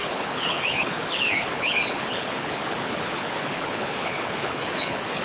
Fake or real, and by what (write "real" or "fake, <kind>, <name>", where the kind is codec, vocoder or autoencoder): fake, codec, HILCodec